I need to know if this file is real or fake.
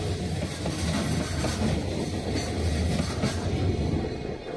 real